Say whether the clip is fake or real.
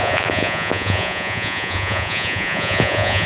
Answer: fake